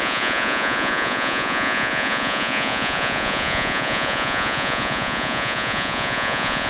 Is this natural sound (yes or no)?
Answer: no